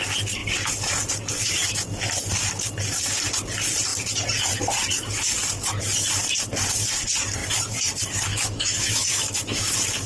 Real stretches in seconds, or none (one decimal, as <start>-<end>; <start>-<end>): 0.0-8.3; 9.7-10.1